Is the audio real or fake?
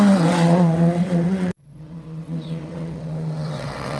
fake